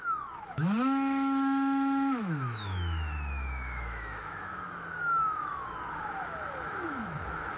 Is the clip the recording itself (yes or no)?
no